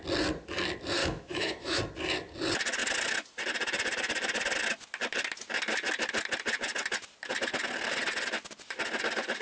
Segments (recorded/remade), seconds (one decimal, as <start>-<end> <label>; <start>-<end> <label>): 0.0-1.0 recorded; 1.0-1.8 remade; 1.8-9.4 recorded